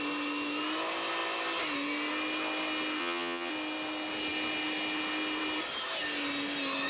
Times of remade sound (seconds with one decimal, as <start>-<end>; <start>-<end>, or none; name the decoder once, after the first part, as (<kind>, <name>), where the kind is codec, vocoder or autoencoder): 3.0-3.5 (vocoder, HiFi-GAN)